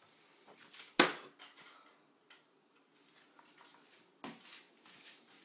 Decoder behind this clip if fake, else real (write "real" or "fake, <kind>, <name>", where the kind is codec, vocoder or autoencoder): real